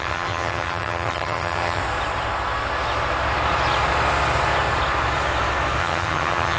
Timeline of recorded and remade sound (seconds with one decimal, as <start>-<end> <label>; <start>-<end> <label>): 0.0-1.8 remade; 1.8-5.8 recorded; 5.8-6.6 remade